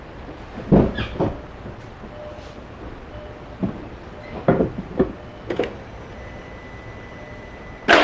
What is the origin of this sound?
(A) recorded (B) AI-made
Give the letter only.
A